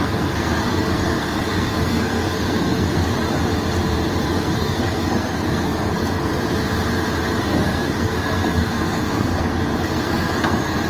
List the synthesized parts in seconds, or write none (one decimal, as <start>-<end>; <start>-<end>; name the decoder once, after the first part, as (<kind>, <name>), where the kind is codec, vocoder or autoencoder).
0.0-3.2 (codec, SNAC); 4.2-6.3; 7.4-10.9

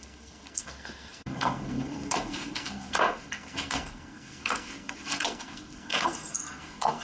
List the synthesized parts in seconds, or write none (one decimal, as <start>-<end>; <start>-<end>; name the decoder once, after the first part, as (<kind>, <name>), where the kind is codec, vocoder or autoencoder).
0.0-7.0 (codec, SNAC)

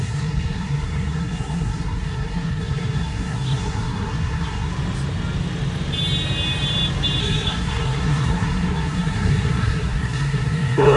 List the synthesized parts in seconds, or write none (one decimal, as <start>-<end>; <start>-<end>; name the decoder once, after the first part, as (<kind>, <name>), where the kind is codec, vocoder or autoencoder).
0.0-4.7 (codec, SNAC); 7.2-11.0